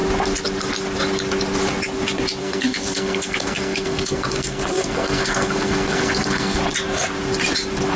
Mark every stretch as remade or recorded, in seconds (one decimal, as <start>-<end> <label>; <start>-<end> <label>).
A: 0.0-2.4 recorded; 2.4-6.6 remade; 6.6-8.0 recorded